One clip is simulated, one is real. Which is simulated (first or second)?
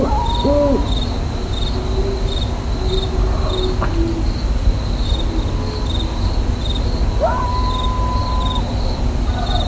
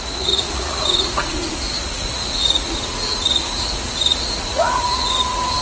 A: second